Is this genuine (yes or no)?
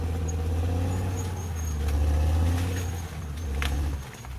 yes